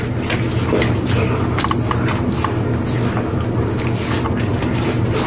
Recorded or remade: recorded